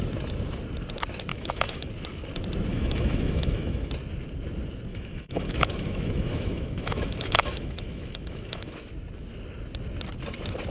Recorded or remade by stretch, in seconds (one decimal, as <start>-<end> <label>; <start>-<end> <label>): 0.0-1.3 recorded; 1.3-1.9 remade; 1.9-2.7 recorded; 2.7-3.9 remade; 3.9-4.9 recorded; 4.9-8.9 remade; 8.9-10.7 recorded